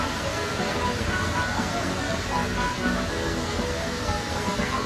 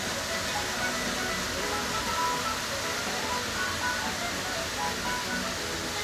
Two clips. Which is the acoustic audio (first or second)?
second